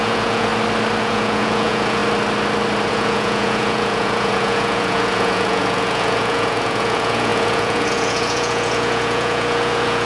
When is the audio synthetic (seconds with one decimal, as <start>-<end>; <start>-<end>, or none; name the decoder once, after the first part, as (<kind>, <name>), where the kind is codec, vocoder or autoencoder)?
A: 0.0-0.5 (vocoder, Vocos); 1.0-2.0; 2.9-10.1